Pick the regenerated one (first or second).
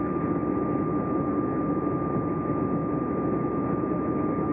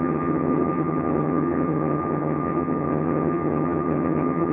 second